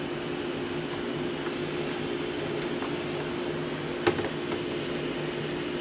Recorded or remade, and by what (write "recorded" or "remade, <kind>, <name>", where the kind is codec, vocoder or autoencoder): recorded